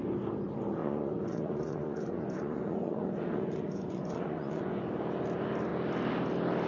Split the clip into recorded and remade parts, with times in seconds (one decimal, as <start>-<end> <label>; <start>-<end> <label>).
0.0-0.8 recorded; 0.8-4.8 remade; 4.8-6.7 recorded